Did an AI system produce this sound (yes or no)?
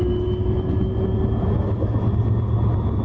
no